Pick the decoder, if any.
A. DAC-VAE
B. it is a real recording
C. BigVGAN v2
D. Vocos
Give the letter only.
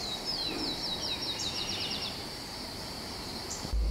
C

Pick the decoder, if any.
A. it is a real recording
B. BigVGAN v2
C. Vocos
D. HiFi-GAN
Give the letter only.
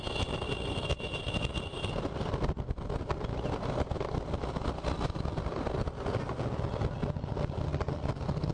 A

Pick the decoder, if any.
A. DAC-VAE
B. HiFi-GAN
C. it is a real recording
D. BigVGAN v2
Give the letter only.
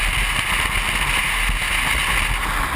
C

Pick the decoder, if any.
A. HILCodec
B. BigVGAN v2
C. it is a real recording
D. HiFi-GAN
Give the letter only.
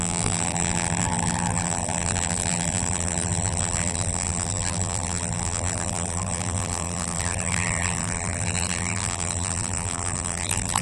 B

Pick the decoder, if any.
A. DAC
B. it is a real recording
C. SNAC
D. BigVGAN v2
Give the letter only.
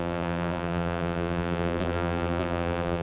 D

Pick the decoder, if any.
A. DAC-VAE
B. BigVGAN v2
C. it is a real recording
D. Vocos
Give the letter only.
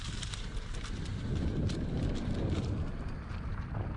B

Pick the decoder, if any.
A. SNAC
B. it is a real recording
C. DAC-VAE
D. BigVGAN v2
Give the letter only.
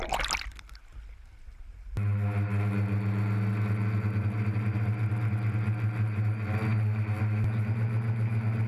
B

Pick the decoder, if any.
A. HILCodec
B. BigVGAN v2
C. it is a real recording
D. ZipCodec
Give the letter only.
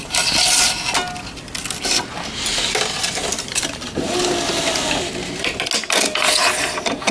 C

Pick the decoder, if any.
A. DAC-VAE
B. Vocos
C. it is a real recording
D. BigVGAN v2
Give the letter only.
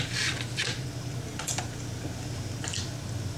C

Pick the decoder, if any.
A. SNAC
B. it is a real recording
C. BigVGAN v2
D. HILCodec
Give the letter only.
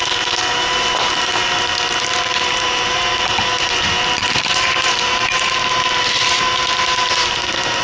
C